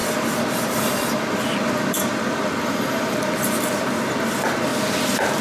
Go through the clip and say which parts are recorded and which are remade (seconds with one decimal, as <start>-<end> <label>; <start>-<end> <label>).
0.0-3.2 remade; 3.2-5.4 recorded